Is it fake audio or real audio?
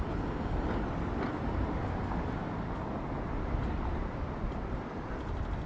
real